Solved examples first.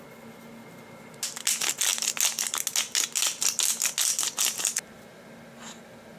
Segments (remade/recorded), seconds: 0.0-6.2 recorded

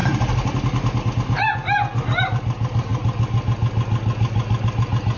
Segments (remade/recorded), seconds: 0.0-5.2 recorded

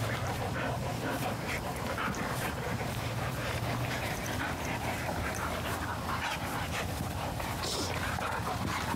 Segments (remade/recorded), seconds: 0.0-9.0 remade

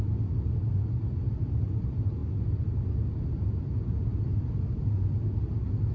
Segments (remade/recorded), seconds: 0.0-5.9 recorded

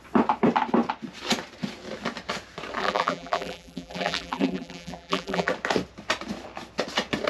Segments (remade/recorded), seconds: 0.0-2.8 recorded; 2.8-5.5 remade; 5.5-7.3 recorded